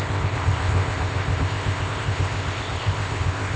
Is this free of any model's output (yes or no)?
no